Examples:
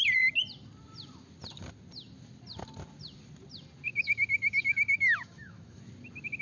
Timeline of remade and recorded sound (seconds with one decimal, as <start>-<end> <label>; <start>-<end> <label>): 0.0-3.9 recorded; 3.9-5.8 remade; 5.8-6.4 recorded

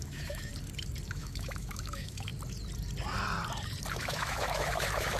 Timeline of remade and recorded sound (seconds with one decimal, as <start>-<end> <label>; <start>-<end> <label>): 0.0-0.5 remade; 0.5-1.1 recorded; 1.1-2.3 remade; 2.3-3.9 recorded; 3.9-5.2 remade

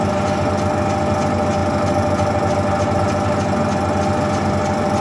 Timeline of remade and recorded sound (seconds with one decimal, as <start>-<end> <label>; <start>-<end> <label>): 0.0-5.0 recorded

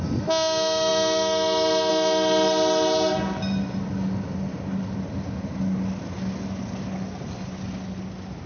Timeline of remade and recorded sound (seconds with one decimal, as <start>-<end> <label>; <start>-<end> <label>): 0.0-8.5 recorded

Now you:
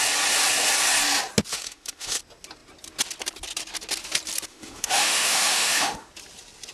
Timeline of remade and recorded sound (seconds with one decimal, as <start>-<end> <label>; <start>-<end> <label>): 0.0-1.5 recorded; 1.5-2.2 remade; 2.2-4.5 recorded; 4.5-6.1 remade; 6.1-6.7 recorded